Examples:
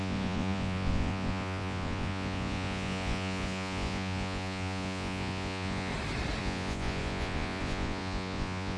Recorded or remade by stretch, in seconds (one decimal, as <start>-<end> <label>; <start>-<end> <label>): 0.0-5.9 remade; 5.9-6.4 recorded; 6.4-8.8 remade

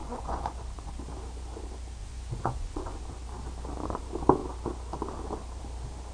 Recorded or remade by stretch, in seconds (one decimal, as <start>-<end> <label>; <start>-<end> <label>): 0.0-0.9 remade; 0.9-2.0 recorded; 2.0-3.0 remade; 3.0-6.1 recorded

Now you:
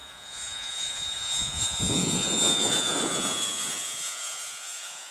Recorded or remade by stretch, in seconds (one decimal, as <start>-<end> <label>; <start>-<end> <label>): 0.0-5.1 remade